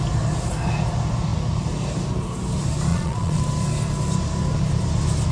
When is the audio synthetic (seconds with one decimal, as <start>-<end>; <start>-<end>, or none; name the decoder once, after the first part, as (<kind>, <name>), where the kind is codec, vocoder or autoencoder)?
2.9-3.4 (vocoder, Vocos)